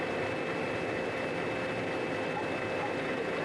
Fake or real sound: real